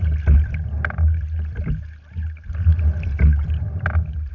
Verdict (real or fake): real